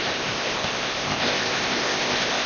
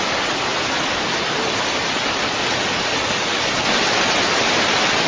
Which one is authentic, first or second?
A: second